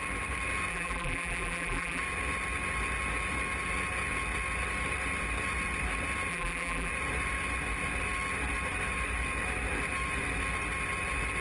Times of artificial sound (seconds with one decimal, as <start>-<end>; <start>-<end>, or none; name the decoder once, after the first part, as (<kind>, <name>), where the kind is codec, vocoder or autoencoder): 0.7-2.0 (vocoder, BigVGAN v2); 6.3-6.9